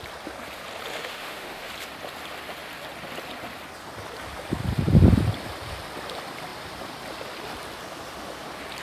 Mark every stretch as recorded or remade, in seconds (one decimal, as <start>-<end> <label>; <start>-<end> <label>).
0.0-0.9 recorded; 0.9-1.7 remade; 1.7-8.8 recorded